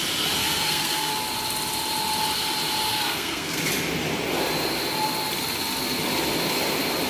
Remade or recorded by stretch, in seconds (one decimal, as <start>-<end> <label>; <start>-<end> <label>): 0.0-0.4 recorded; 0.4-1.1 remade; 1.1-2.9 recorded; 2.9-3.6 remade; 3.6-7.1 recorded